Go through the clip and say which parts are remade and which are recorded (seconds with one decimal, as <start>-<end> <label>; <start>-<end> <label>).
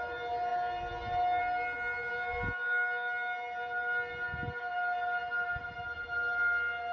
0.0-6.9 recorded